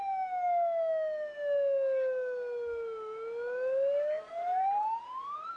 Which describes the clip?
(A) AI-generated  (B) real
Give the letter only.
B